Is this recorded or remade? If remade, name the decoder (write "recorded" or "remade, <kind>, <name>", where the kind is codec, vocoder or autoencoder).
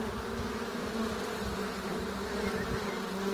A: remade, vocoder, BigVGAN v2